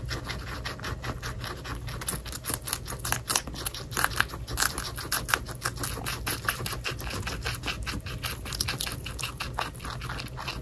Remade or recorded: recorded